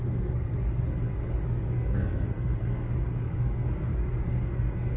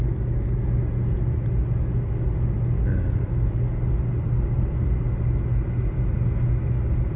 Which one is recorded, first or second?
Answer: second